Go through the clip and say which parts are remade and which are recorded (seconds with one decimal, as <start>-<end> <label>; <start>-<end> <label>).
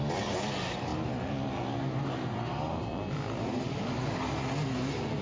0.0-5.2 recorded